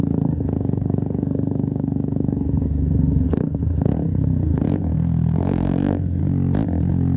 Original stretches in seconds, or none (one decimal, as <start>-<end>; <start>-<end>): 6.2-7.2